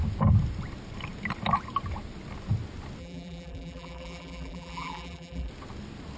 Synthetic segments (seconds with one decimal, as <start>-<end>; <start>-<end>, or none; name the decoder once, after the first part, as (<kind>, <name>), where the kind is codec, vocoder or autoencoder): 3.0-5.5 (vocoder, BigVGAN v2)

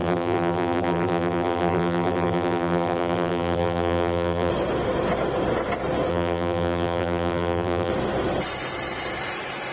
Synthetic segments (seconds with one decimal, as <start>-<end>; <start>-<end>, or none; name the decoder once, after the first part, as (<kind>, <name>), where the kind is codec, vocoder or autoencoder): 0.0-4.5 (vocoder, BigVGAN v2); 6.1-7.9

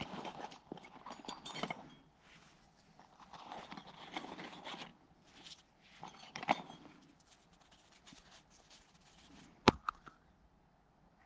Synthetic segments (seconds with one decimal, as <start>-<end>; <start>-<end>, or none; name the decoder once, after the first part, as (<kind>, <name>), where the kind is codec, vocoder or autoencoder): 0.0-8.1 (vocoder, BigVGAN v2); 9.4-11.3

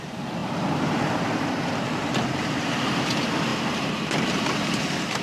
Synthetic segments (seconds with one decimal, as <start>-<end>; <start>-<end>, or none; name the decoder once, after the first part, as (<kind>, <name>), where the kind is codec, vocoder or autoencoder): 0.0-5.2 (vocoder, BigVGAN v2)

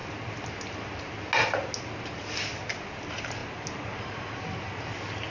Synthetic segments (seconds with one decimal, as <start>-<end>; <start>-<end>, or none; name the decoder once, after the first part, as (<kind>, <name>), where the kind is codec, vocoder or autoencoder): none